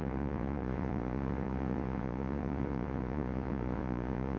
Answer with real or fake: fake